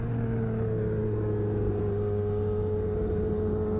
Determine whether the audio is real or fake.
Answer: real